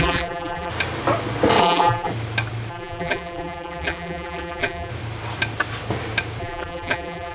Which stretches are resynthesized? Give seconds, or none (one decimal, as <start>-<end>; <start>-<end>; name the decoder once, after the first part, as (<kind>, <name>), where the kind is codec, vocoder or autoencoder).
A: 0.0-0.7 (vocoder, BigVGAN v2); 1.6-2.1; 2.7-4.9; 6.4-7.3